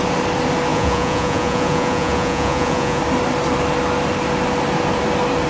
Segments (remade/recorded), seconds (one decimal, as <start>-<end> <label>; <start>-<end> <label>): 0.0-0.7 recorded; 0.7-3.0 remade; 3.0-5.5 recorded